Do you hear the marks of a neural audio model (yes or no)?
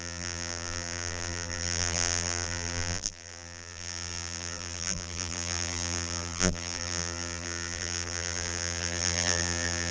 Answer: yes